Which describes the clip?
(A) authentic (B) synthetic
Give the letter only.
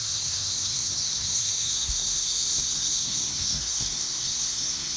B